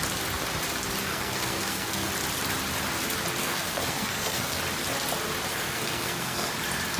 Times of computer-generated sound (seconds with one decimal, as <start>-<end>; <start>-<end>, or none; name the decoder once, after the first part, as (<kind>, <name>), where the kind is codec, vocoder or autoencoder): 1.1-2.1 (codec, SNAC); 3.4-4.6; 5.5-6.5